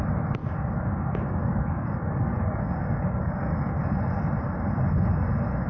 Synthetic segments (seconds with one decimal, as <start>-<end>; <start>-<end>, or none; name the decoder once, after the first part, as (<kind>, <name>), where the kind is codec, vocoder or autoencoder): 0.4-3.8 (codec, DAC)